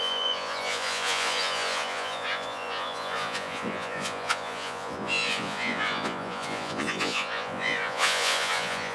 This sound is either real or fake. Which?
fake